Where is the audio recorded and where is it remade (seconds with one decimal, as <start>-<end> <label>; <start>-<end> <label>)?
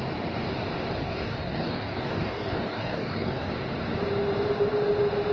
0.0-1.0 recorded; 1.0-3.5 remade; 3.5-5.3 recorded